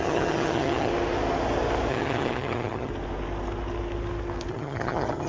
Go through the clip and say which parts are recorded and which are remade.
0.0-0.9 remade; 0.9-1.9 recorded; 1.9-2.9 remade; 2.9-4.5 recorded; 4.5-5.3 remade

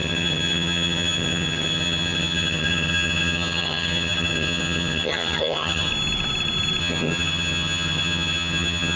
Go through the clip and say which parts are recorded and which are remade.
0.0-5.9 remade; 5.9-6.8 recorded; 6.8-9.0 remade

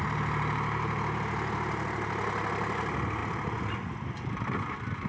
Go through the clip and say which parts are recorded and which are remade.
0.0-3.2 recorded; 3.2-5.1 remade

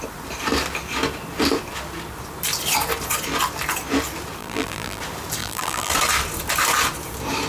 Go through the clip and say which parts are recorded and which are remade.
0.0-4.4 recorded; 4.4-5.0 remade; 5.0-5.4 recorded; 5.4-5.9 remade; 5.9-7.5 recorded

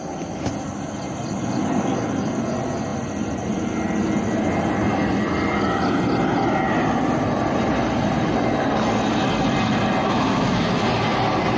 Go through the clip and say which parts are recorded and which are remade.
0.0-10.0 recorded; 10.0-10.8 remade; 10.8-11.6 recorded

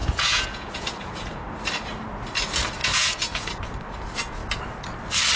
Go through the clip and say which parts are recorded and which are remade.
0.0-1.4 remade; 1.4-2.8 recorded; 2.8-3.5 remade; 3.5-5.4 recorded